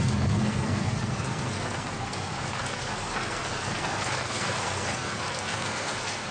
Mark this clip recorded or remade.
remade